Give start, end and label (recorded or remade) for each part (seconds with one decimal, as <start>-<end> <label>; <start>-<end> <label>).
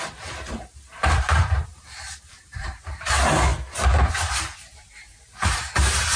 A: 0.0-3.5 remade; 3.5-4.1 recorded; 4.1-6.2 remade